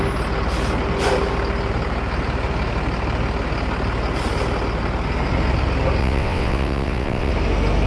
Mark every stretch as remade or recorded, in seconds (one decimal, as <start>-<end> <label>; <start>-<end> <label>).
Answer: 0.0-6.0 recorded; 6.0-7.3 remade; 7.3-7.9 recorded